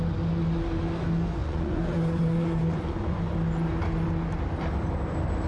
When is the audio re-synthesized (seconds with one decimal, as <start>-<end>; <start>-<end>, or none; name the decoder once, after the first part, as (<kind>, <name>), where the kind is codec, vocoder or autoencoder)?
1.4-3.2 (vocoder, Vocos)